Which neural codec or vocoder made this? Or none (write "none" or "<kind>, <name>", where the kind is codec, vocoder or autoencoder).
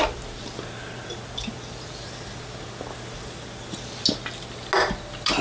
none